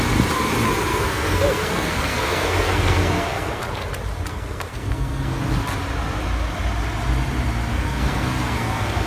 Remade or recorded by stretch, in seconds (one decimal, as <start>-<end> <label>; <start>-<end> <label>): 0.0-0.9 recorded; 0.9-3.6 remade; 3.6-4.3 recorded; 4.3-5.4 remade; 5.4-7.7 recorded; 7.7-9.1 remade